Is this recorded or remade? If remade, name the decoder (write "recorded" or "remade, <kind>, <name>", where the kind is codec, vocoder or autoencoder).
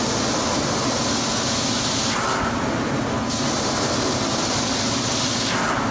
remade, vocoder, BigVGAN v2